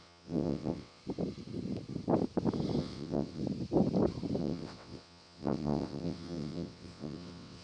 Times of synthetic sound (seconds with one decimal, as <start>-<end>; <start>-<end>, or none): 0.0-1.0; 2.8-3.4; 4.4-7.6